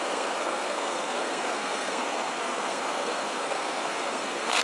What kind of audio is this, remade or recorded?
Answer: remade